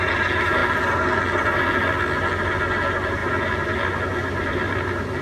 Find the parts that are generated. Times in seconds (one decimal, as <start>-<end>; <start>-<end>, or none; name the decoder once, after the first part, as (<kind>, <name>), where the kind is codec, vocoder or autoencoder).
4.2-5.2 (vocoder, BigVGAN v2)